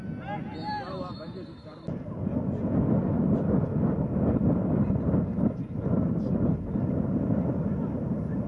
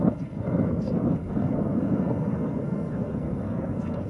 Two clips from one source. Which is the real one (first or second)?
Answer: first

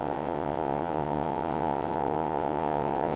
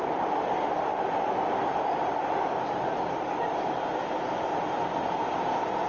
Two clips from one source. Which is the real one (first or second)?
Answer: second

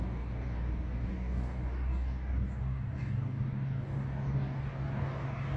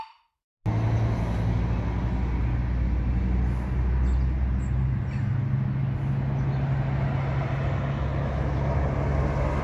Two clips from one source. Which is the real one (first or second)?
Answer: second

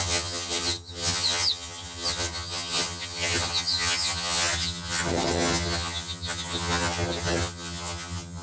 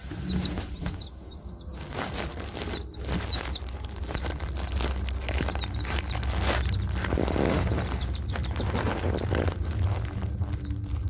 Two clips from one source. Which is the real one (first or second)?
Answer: second